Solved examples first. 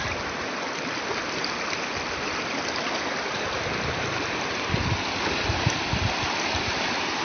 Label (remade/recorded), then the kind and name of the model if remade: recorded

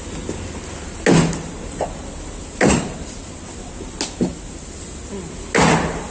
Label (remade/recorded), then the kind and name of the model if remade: recorded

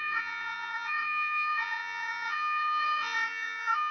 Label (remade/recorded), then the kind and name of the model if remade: remade, vocoder, Vocos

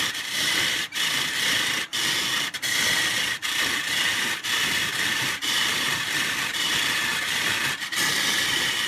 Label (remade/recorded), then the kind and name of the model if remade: remade, vocoder, BigVGAN v2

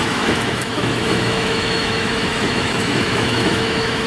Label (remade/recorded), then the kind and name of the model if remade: remade, autoencoder, DAC-VAE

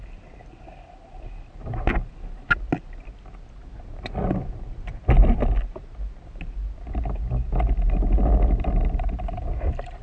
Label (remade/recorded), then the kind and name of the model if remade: recorded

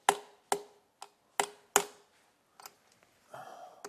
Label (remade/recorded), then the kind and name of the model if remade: recorded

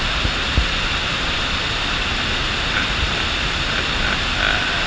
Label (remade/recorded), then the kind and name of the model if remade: recorded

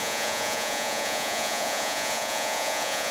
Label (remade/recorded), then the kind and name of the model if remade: remade, vocoder, Vocos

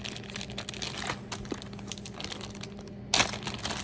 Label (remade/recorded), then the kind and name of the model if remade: recorded